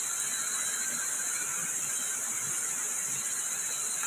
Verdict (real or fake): real